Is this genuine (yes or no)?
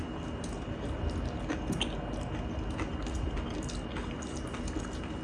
yes